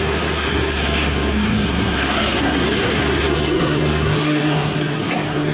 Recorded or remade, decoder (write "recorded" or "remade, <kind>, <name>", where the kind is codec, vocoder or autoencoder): remade, codec, SNAC